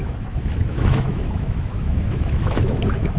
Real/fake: fake